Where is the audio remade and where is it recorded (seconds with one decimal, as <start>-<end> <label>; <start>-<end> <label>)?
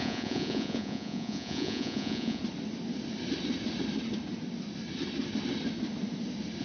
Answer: 0.0-2.4 remade; 2.4-6.6 recorded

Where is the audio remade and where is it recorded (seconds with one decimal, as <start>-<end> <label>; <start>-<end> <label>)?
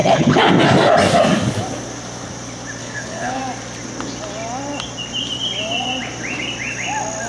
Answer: 0.0-0.5 remade; 0.5-2.8 recorded; 2.8-3.4 remade; 3.4-7.3 recorded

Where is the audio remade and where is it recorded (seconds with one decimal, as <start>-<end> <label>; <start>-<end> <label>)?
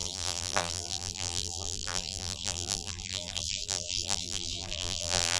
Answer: 0.0-5.4 remade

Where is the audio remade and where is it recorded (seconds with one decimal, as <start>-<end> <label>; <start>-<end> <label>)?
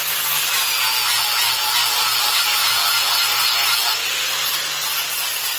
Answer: 0.0-2.6 recorded; 2.6-3.1 remade; 3.1-5.6 recorded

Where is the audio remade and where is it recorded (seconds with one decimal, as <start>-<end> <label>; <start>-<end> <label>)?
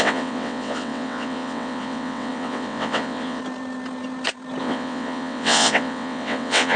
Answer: 0.0-3.4 remade; 3.4-4.6 recorded; 4.6-6.8 remade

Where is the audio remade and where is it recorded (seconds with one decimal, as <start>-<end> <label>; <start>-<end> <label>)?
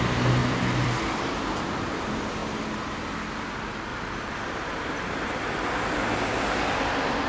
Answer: 0.0-0.4 recorded; 0.4-1.4 remade; 1.4-3.9 recorded; 3.9-5.0 remade; 5.0-7.3 recorded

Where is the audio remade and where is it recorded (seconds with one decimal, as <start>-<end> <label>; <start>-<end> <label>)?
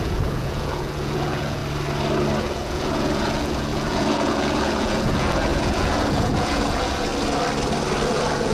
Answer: 0.0-1.6 remade; 1.6-2.4 recorded; 2.4-7.1 remade; 7.1-8.1 recorded; 8.1-8.5 remade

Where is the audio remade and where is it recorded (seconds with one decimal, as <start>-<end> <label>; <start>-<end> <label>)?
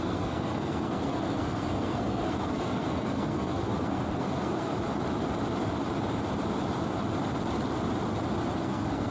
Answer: 0.0-4.7 remade; 4.7-8.6 recorded; 8.6-9.1 remade